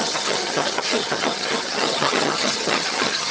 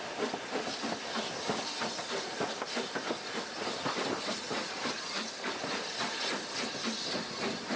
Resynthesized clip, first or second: first